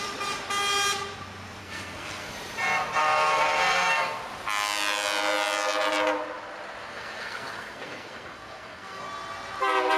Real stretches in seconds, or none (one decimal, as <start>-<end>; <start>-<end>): 0.0-1.6; 2.3-3.0; 4.2-6.9; 9.0-10.0